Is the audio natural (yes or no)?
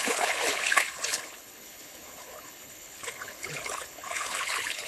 no